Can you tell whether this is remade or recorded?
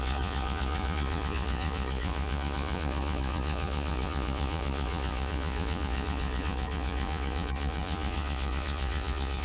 remade